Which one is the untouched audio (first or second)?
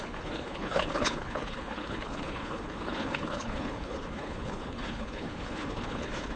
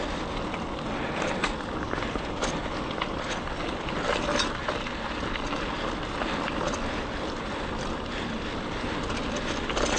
second